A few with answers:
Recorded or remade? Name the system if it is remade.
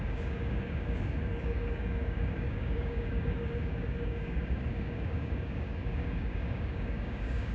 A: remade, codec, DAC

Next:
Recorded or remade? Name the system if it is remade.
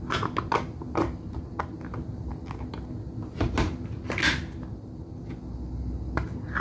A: recorded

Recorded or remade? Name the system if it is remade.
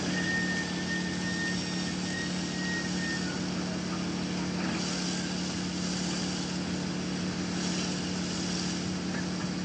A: recorded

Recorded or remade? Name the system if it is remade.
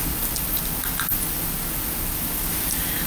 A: recorded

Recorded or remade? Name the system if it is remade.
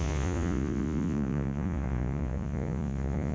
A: remade, vocoder, Vocos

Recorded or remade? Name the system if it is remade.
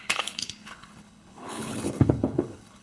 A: remade, codec, HILCodec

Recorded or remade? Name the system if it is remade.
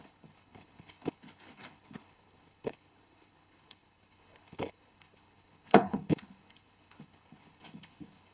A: remade, codec, HILCodec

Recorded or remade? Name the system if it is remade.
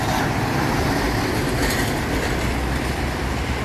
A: recorded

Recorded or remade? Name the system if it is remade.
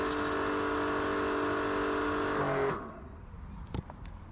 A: recorded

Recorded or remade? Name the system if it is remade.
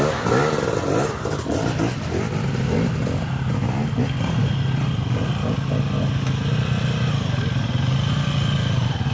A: recorded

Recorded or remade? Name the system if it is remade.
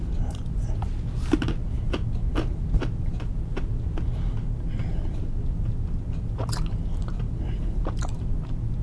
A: recorded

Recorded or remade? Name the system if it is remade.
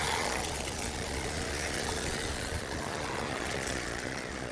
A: remade, vocoder, Vocos